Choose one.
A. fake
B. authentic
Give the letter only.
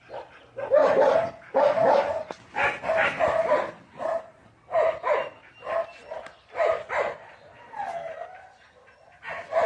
B